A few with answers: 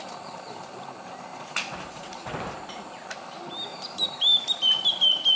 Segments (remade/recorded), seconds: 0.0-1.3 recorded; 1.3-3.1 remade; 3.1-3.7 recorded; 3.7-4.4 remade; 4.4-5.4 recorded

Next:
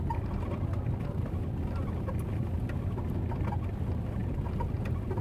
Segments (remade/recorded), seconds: 0.0-5.2 recorded

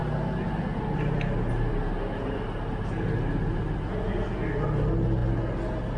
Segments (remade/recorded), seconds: 0.0-6.0 recorded

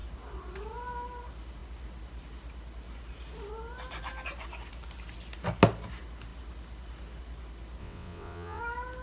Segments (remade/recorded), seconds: 0.0-7.8 recorded; 7.8-8.6 remade; 8.6-9.0 recorded

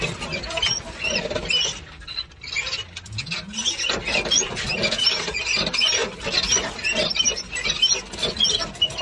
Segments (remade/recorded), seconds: 0.0-9.0 recorded

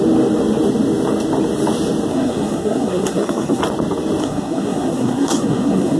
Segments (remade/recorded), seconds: 0.0-2.1 recorded; 2.1-3.6 remade; 3.6-4.2 recorded; 4.2-6.0 remade